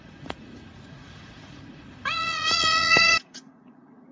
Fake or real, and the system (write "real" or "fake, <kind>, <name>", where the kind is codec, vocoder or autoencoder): fake, vocoder, Vocos